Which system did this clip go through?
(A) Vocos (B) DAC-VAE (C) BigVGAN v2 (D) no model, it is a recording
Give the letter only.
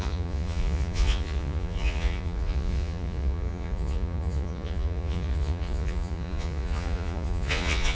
A